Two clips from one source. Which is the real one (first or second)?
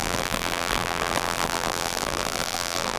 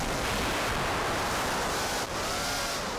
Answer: second